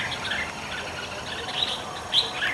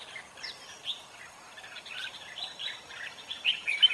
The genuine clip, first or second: first